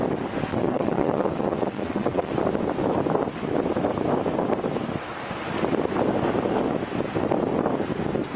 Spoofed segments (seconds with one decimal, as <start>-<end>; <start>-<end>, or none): 0.5-2.3